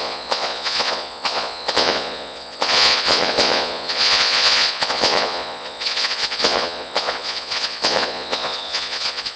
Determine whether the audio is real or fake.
fake